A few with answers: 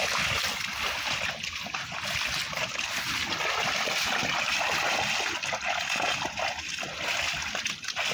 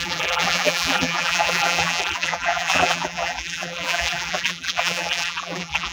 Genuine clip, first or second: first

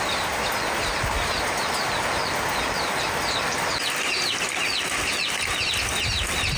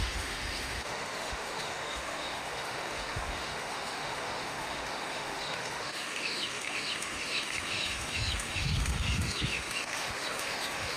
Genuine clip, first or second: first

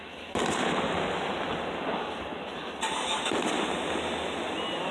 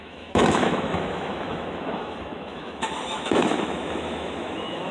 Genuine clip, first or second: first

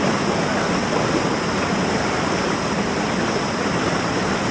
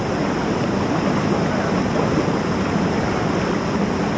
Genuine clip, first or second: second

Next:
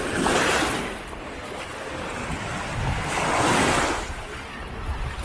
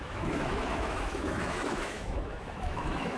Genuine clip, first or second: first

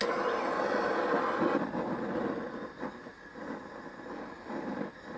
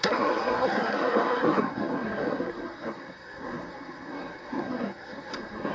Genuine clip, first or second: first